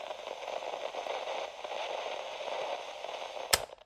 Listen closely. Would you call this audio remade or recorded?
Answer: recorded